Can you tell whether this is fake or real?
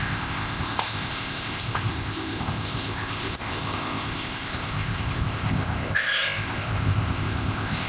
fake